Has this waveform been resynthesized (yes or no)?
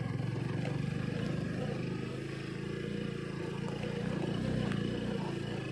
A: no